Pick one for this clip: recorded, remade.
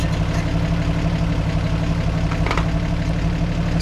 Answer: recorded